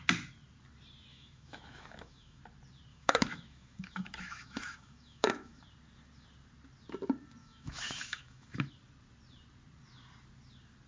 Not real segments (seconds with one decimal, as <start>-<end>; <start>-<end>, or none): 1.1-2.4; 2.9-5.6; 7.4-8.7